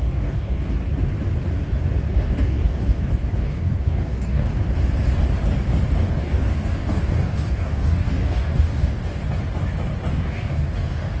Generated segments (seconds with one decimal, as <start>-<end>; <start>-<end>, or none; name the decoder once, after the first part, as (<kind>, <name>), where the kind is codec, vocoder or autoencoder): 0.0-0.8 (codec, DAC); 2.1-4.5; 6.0-9.2; 10.1-11.2

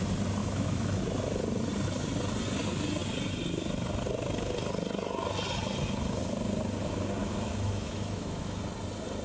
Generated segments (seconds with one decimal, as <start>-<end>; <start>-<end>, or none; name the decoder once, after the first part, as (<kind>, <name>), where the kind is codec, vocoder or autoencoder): 0.4-1.0 (autoencoder, DAC-VAE); 7.2-8.6